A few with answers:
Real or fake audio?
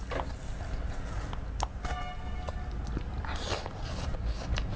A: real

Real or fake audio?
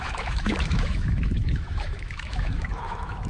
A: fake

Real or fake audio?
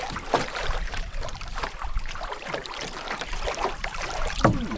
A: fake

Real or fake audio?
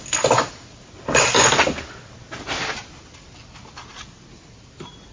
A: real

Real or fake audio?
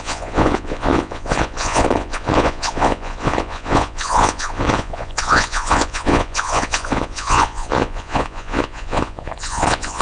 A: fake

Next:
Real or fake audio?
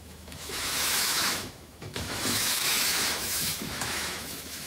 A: fake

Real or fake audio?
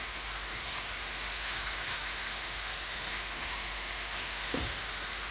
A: fake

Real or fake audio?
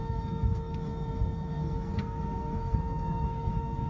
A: fake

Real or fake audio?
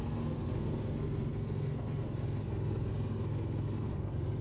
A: fake